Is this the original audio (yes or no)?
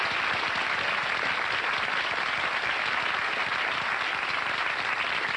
yes